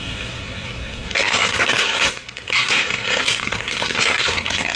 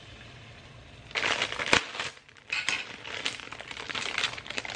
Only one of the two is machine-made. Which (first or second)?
first